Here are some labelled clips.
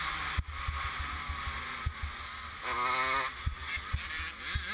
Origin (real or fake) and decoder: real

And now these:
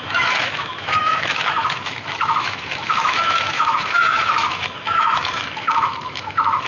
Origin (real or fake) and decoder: fake, autoencoder, DAC-VAE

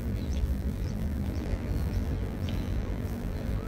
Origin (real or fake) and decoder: fake, vocoder, BigVGAN v2